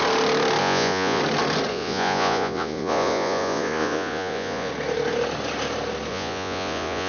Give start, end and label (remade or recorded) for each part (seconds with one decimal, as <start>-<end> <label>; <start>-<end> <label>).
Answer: 0.0-0.6 recorded; 0.6-1.2 remade; 1.2-1.7 recorded; 1.7-4.7 remade; 4.7-6.1 recorded; 6.1-7.1 remade